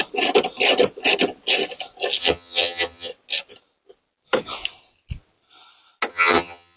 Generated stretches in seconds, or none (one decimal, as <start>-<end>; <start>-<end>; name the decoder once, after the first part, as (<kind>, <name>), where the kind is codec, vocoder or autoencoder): 2.2-3.1 (vocoder, HiFi-GAN); 6.1-6.8